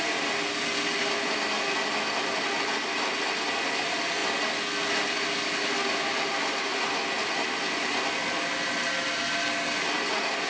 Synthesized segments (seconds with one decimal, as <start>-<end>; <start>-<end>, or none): none